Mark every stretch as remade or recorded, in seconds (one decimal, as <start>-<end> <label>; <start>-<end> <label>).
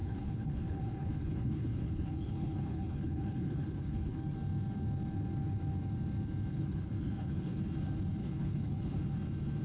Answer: 0.0-4.2 remade; 4.2-6.5 recorded; 6.5-7.6 remade; 7.6-8.2 recorded; 8.2-9.0 remade; 9.0-9.6 recorded